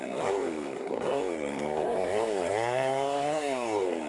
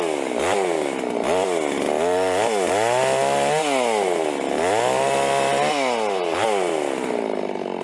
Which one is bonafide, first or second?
second